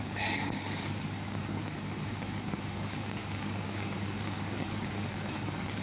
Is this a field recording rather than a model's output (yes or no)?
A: no